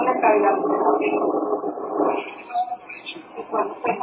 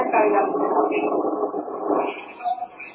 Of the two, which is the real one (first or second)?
first